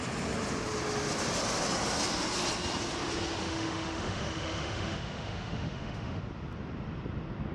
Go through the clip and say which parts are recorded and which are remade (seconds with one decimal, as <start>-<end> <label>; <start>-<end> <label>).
0.0-3.4 recorded; 3.4-6.2 remade; 6.2-7.5 recorded